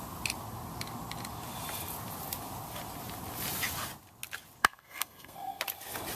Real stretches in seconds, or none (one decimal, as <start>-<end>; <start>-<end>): 0.0-4.6; 5.6-6.2